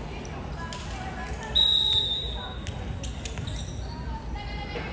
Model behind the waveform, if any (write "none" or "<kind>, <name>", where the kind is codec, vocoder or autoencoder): none